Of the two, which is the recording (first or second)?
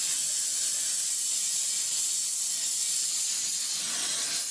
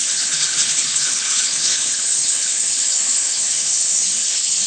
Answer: first